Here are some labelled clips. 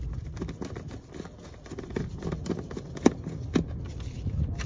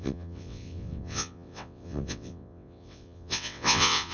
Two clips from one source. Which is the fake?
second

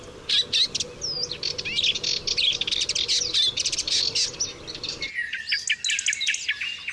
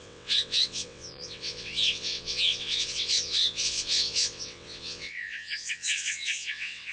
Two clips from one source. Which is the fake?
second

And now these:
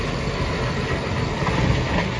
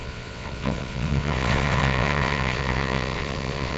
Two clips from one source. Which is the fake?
second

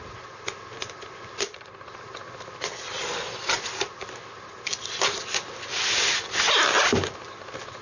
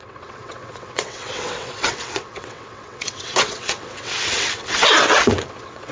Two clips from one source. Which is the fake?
second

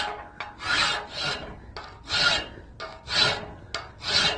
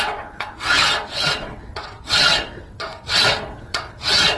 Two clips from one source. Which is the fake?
second